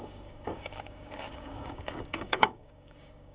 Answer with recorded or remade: remade